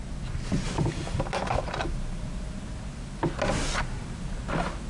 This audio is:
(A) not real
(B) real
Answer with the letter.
B